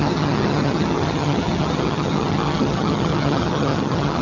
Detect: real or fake fake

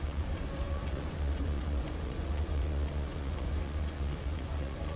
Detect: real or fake fake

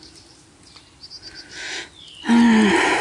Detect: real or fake real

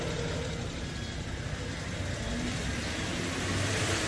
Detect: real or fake real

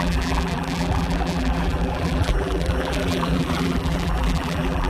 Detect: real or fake fake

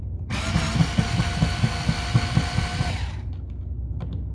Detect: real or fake real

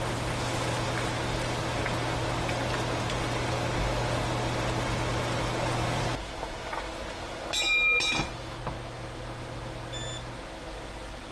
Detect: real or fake real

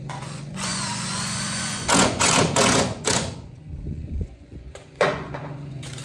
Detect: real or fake fake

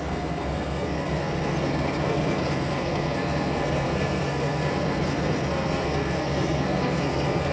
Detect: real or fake fake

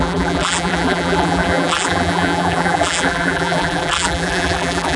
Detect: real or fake fake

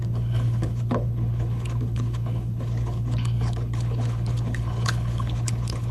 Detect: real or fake fake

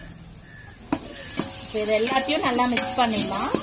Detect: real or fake real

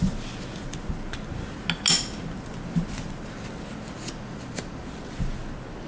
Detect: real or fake real